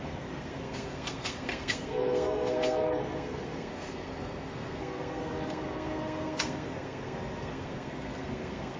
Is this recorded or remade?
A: remade